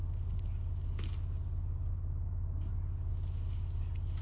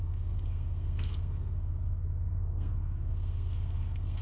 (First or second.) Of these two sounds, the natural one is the first